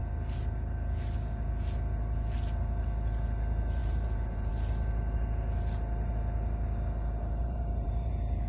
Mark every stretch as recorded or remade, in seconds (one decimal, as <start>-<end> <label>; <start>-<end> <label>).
0.0-3.8 recorded; 3.8-4.5 remade; 4.5-7.4 recorded; 7.4-8.1 remade; 8.1-8.5 recorded